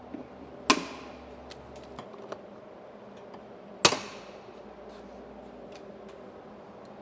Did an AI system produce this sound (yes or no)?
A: no